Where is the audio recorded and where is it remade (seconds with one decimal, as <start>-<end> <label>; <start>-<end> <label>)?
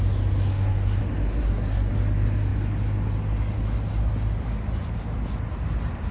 0.0-0.5 recorded; 0.5-1.0 remade; 1.0-1.4 recorded; 1.4-1.9 remade; 1.9-6.1 recorded